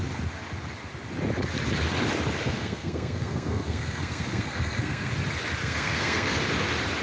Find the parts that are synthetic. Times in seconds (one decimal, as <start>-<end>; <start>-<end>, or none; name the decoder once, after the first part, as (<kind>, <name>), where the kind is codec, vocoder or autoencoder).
2.4-5.1 (codec, SNAC); 5.6-6.4